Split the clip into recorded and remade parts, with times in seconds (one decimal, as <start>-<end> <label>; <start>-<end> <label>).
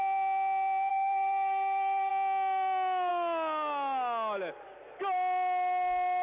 0.0-0.9 recorded; 0.9-2.1 remade; 2.1-6.2 recorded